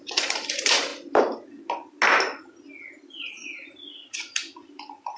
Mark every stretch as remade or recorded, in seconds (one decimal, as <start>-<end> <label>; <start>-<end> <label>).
0.0-0.9 remade; 0.9-3.3 recorded; 3.3-5.2 remade